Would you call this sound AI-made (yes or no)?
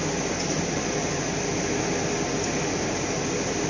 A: no